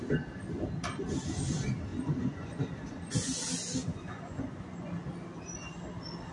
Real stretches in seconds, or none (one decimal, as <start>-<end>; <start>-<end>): 0.0-1.9; 2.5-3.8; 4.9-6.3